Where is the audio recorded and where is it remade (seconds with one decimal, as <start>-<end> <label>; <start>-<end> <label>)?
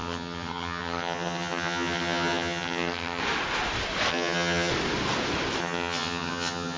0.0-3.2 remade; 3.2-4.1 recorded; 4.1-4.7 remade; 4.7-5.6 recorded; 5.6-6.8 remade